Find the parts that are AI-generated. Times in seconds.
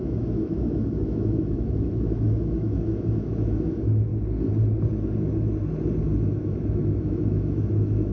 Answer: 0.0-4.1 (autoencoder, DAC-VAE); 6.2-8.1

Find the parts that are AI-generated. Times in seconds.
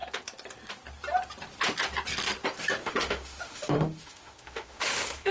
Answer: 2.8-5.3 (autoencoder, DAC-VAE)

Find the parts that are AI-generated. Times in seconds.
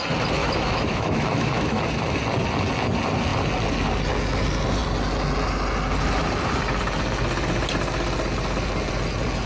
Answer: 0.4-1.8 (autoencoder, DAC-VAE)